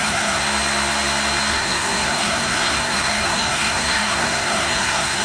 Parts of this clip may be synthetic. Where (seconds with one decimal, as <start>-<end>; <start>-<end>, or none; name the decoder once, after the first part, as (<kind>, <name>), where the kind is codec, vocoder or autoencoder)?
0.0-0.4 (codec, SNAC); 1.5-5.2